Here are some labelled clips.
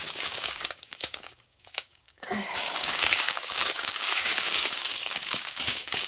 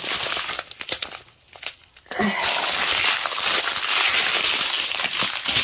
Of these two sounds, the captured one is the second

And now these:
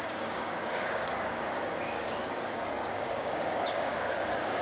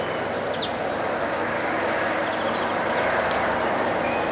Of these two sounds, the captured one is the second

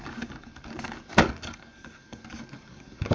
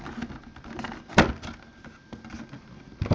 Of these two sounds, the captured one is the second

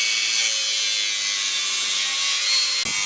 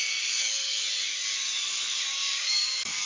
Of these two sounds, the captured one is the first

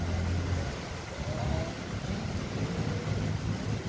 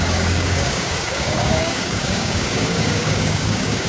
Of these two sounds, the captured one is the first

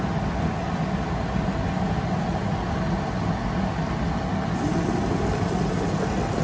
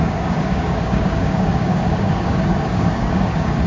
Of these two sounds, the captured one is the first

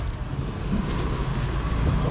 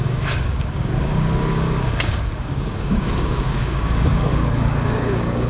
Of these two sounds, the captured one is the first